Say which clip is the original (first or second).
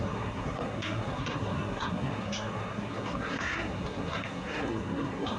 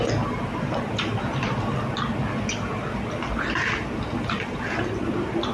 second